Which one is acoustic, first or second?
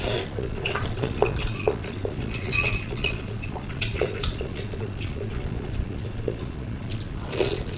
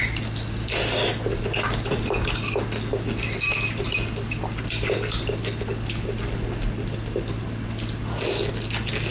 second